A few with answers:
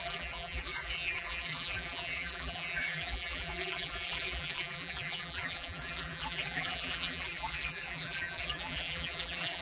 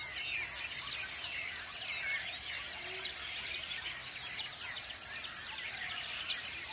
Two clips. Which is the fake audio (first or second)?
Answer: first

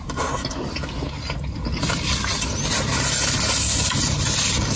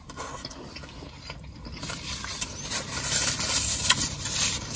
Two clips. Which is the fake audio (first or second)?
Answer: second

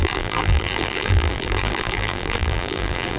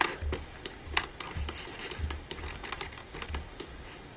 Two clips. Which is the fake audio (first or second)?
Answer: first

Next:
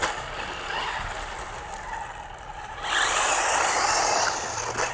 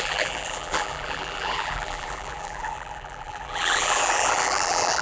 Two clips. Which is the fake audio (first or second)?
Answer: second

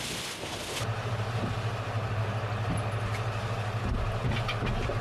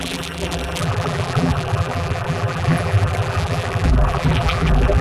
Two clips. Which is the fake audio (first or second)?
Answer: second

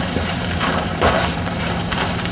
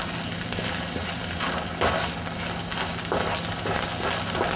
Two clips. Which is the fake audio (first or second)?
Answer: first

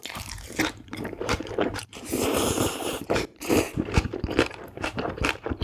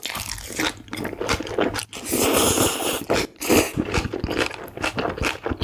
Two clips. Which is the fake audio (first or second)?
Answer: first